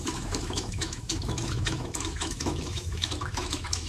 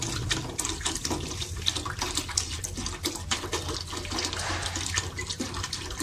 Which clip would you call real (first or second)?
second